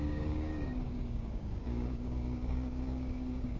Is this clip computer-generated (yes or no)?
yes